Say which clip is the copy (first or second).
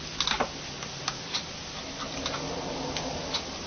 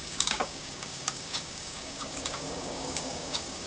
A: second